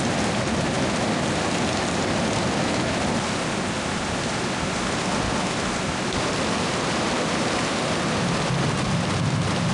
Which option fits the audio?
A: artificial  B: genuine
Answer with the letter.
B